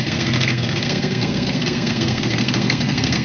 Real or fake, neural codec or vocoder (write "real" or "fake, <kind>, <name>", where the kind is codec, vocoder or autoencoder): fake, codec, SNAC